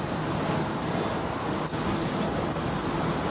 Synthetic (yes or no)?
no